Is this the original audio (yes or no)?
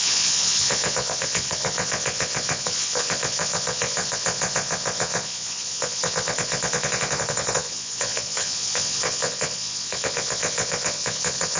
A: no